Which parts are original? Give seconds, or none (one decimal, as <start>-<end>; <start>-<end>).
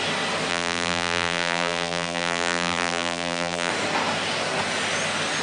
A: 0.0-0.5; 3.7-5.4